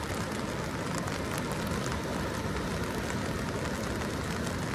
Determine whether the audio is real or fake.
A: real